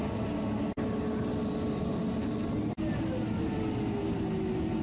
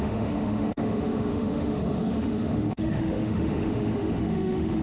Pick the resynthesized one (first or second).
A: second